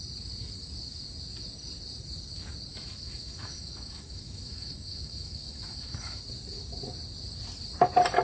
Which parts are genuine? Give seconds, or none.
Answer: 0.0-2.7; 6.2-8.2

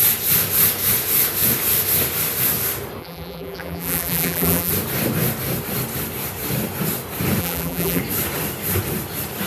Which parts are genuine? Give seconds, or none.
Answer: 0.0-3.0; 4.7-7.4; 8.0-9.5

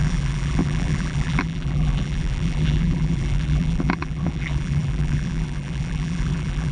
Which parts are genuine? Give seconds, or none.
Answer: none

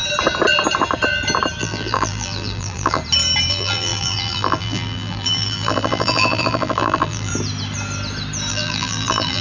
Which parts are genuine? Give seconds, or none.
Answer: 0.0-1.6; 3.0-3.5; 7.3-8.5

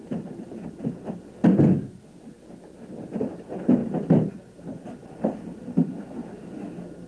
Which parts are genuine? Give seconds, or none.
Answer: 1.4-2.2; 6.2-7.1